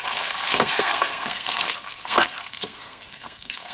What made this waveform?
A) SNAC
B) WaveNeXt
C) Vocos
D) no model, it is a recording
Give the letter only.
A